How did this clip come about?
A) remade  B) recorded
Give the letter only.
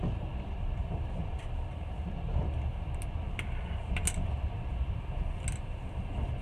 B